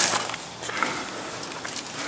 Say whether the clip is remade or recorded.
recorded